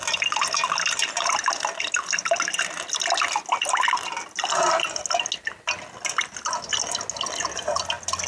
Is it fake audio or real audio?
real